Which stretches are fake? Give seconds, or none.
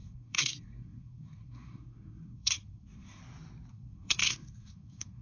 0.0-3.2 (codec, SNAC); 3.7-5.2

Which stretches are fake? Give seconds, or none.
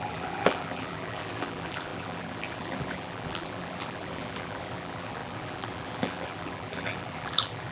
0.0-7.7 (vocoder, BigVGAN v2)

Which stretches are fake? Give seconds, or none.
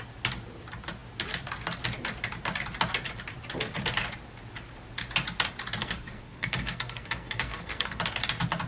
5.8-8.0 (codec, SNAC)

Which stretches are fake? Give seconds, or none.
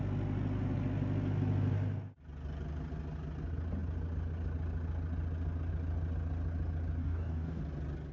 7.0-7.6 (codec, DAC)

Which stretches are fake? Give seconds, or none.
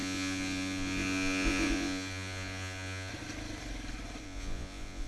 0.0-3.1 (vocoder, Vocos); 4.2-5.1